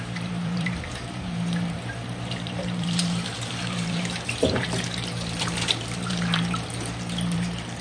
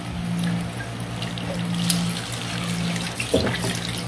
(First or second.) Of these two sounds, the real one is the second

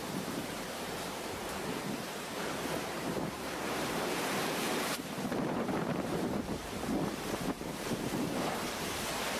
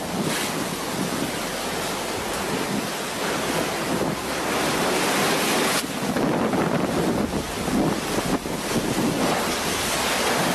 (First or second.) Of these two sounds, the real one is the second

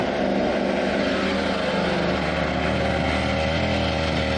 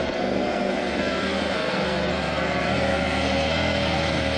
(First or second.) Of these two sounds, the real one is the first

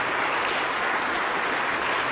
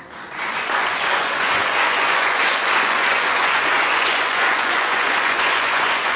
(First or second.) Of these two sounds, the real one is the first